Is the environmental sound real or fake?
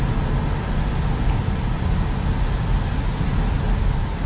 real